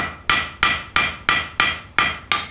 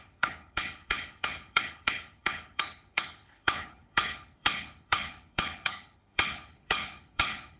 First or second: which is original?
first